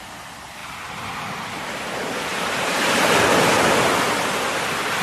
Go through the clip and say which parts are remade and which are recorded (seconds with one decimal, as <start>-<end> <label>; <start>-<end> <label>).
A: 0.0-2.3 recorded; 2.3-3.1 remade; 3.1-5.0 recorded